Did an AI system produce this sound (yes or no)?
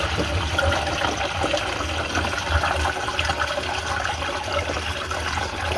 no